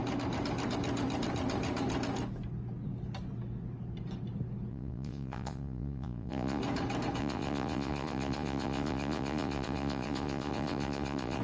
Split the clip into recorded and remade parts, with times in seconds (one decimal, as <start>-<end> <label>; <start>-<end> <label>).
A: 0.0-4.7 recorded; 4.7-6.6 remade; 6.6-7.2 recorded; 7.2-11.4 remade